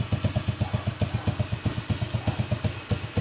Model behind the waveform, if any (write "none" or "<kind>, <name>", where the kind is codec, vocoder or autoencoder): none